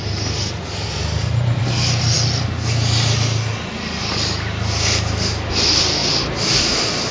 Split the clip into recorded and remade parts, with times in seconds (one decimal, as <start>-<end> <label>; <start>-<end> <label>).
0.0-7.1 recorded